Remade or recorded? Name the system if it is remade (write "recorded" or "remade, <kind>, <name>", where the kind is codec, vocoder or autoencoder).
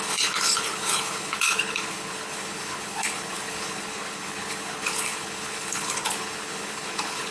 remade, codec, HILCodec